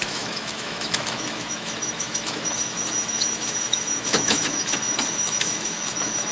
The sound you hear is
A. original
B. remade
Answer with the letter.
B